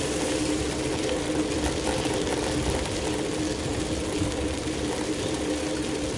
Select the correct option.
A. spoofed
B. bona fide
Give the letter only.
B